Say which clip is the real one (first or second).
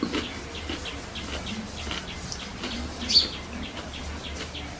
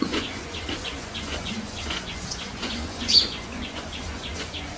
first